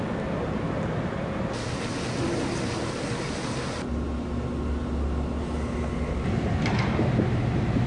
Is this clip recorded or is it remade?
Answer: recorded